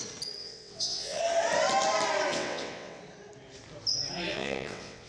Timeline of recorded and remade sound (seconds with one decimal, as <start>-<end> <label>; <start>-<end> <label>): 0.0-0.4 recorded; 0.4-1.2 remade; 1.2-2.3 recorded; 2.3-3.0 remade; 3.0-4.3 recorded; 4.3-5.1 remade